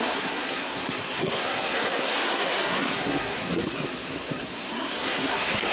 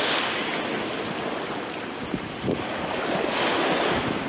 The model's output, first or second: first